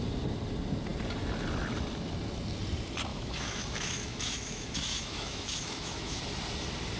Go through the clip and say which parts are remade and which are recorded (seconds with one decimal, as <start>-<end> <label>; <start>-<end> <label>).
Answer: 0.0-3.1 recorded; 3.1-6.2 remade; 6.2-7.0 recorded